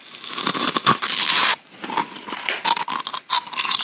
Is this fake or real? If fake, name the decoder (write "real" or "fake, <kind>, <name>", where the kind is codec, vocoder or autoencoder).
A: real